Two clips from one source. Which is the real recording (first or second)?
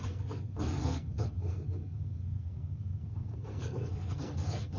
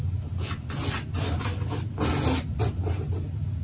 second